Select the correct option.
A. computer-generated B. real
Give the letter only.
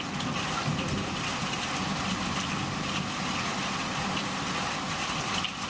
B